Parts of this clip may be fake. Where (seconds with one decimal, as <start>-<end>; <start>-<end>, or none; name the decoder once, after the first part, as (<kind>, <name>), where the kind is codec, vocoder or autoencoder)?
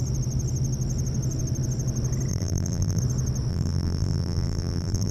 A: 2.3-3.0 (vocoder, BigVGAN v2); 3.5-5.1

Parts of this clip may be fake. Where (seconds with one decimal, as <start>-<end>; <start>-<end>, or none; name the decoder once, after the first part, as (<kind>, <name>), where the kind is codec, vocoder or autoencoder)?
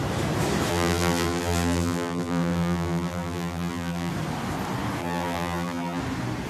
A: 0.7-4.1 (vocoder, BigVGAN v2); 5.0-6.0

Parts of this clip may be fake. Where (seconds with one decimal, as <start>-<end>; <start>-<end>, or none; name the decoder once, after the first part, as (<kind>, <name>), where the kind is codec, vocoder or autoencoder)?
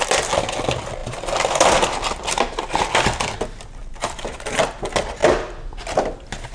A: 3.8-4.6 (vocoder, BigVGAN v2)